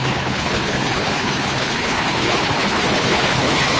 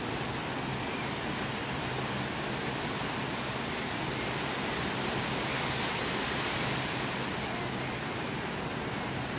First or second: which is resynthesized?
first